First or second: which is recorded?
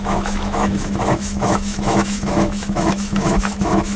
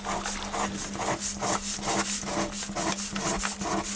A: second